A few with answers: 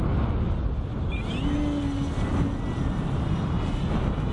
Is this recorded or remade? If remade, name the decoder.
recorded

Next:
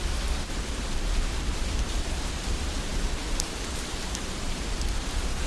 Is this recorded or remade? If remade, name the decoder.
remade, vocoder, BigVGAN v2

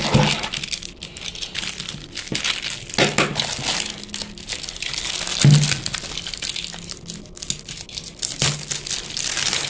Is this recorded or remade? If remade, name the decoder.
recorded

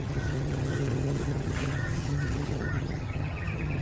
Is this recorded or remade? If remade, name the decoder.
remade, vocoder, HiFi-GAN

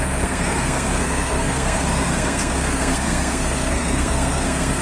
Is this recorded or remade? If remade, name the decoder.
remade, codec, SNAC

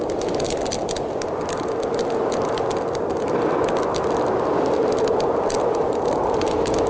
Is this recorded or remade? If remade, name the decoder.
recorded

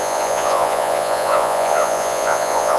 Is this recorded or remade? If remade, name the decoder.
remade, vocoder, Vocos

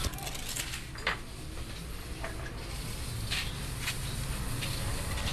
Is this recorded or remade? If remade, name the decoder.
recorded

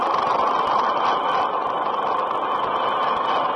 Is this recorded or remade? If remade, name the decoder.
recorded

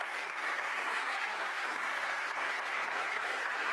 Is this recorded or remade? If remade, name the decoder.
remade, codec, SNAC